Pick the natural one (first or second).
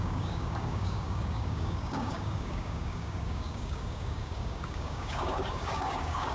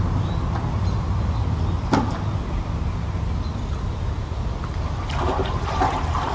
second